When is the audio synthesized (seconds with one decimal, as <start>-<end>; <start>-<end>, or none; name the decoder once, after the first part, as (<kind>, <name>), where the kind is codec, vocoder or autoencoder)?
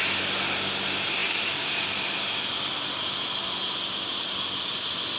none